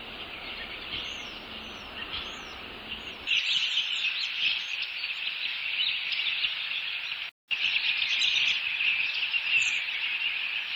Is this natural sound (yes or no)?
yes